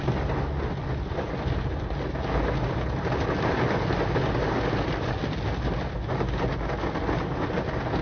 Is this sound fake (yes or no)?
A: no